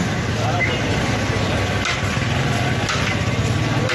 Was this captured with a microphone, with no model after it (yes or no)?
yes